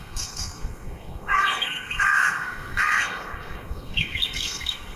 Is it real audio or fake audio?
fake